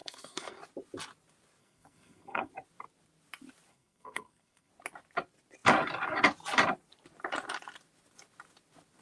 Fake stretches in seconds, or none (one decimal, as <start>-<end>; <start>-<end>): 0.0-0.6; 1.6-2.5; 3.7-4.7